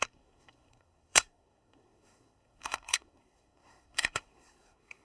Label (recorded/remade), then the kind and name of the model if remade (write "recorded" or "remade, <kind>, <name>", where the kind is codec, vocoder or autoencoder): remade, codec, SNAC